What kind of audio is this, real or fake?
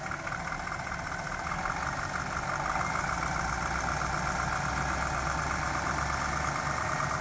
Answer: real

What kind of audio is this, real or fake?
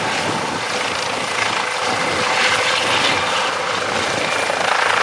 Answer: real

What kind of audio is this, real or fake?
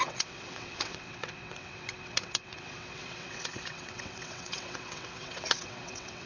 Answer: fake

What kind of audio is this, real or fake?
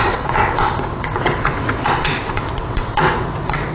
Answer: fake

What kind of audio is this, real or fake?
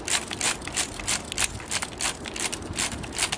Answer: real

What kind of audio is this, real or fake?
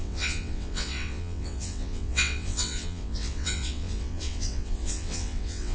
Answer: fake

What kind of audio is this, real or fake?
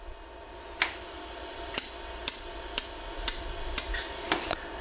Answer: real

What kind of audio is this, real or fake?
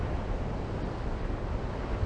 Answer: real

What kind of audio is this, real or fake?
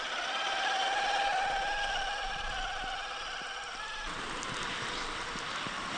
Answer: real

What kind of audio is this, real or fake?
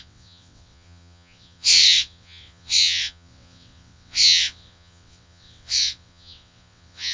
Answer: fake